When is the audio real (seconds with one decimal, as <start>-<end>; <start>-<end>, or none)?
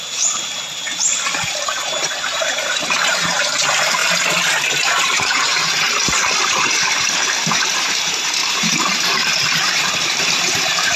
4.0-4.7; 5.6-6.4